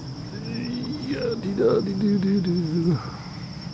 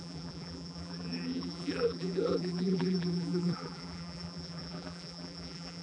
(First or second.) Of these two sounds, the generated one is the second